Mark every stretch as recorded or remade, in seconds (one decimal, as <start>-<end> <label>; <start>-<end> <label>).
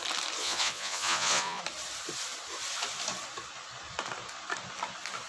0.0-0.4 recorded; 0.4-1.6 remade; 1.6-5.3 recorded